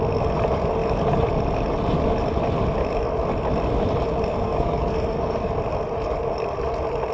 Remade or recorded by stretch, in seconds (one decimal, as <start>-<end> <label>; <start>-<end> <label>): 0.0-4.3 recorded; 4.3-5.5 remade; 5.5-7.1 recorded